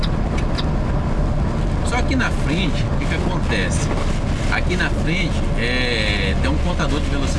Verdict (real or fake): real